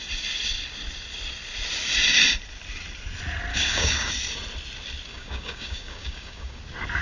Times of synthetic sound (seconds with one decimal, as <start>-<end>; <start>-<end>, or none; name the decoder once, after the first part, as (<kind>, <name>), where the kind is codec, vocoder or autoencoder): 3.5-4.1 (codec, DAC); 5.1-6.6